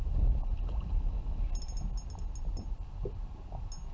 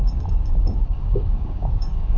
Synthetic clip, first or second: second